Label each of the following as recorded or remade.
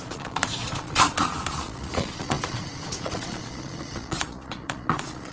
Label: remade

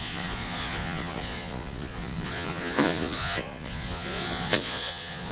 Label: remade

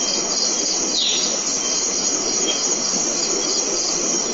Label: recorded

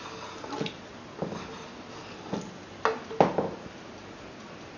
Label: recorded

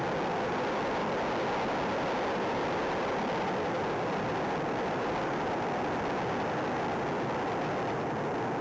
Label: recorded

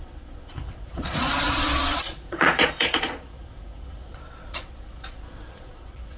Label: remade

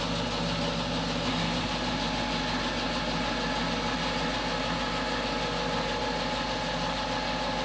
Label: recorded